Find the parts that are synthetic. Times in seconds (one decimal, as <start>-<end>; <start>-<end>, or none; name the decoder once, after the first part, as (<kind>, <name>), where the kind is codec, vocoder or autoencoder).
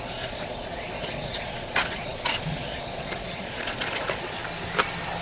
0.0-4.4 (vocoder, Vocos)